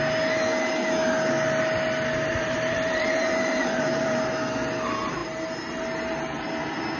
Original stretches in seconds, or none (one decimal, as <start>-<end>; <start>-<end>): 0.0-2.3; 4.2-7.0